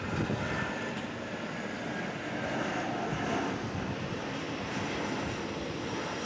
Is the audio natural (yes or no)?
no